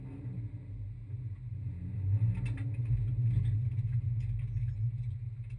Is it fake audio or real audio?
real